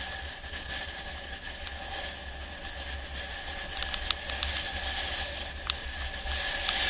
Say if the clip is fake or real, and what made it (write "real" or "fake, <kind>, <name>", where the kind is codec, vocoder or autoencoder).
real